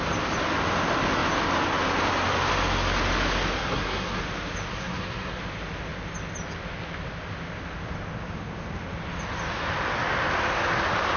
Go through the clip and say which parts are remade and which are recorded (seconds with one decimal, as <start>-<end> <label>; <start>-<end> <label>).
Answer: 0.0-3.6 recorded; 3.6-4.2 remade; 4.2-4.7 recorded; 4.7-5.4 remade; 5.4-11.2 recorded